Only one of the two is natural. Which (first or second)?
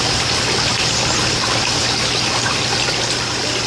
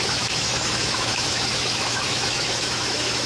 first